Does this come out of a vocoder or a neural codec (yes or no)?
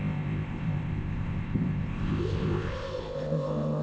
yes